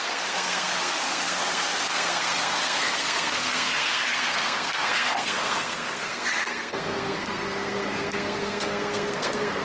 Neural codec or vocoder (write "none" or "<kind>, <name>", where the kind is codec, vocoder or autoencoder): codec, SNAC